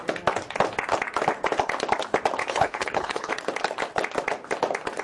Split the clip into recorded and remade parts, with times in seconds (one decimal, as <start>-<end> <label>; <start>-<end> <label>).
0.0-2.4 recorded; 2.4-3.3 remade; 3.3-5.0 recorded